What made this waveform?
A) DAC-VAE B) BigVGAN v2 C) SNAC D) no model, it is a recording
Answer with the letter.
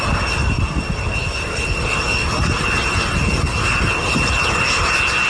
D